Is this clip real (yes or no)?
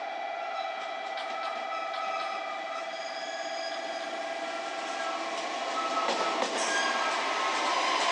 yes